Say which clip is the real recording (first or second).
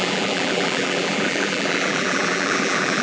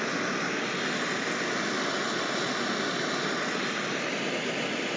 second